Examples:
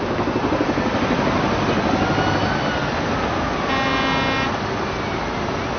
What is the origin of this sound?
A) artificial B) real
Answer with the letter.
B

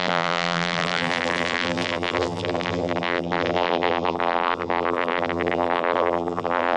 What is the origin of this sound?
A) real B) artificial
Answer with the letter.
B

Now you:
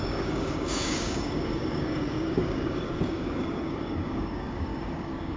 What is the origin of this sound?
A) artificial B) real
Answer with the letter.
A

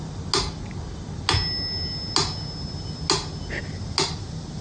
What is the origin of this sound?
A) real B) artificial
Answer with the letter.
A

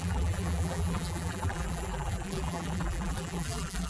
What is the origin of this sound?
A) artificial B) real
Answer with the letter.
A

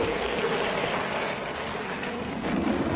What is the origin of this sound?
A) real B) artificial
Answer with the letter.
B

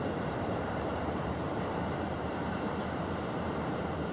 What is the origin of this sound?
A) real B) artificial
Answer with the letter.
B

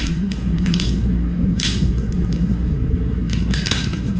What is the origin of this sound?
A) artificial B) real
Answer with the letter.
A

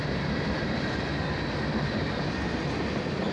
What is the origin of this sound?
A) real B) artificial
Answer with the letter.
A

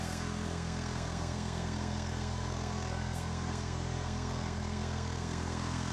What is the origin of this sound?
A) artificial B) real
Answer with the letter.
A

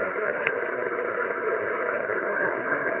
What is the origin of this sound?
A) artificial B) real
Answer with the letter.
A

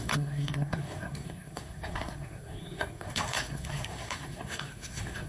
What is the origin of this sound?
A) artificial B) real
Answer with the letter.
A